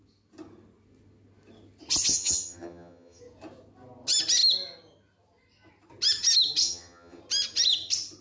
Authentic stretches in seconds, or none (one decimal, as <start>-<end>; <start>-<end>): 0.0-2.1; 3.2-6.6; 7.2-8.2